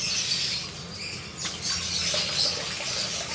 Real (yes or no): yes